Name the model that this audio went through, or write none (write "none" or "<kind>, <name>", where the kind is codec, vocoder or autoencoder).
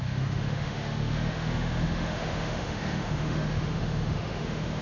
autoencoder, DAC-VAE